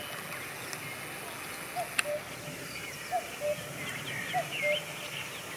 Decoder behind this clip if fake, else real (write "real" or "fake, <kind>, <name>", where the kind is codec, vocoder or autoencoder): real